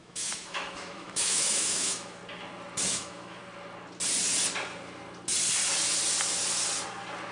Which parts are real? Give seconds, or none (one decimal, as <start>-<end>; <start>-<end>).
2.2-2.9; 3.4-7.3